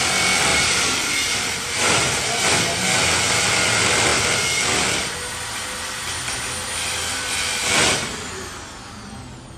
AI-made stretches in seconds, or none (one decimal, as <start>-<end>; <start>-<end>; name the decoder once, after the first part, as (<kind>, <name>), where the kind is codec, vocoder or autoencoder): 0.5-2.2 (vocoder, BigVGAN v2)